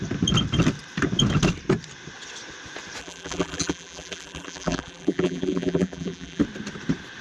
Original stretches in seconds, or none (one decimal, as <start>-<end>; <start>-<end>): 0.0-3.0; 6.4-7.2